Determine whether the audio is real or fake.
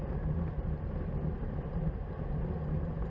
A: real